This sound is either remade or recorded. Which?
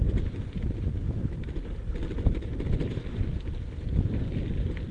recorded